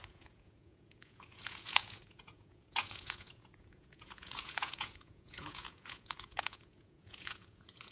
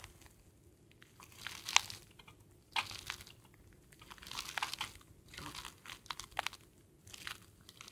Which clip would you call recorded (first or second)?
second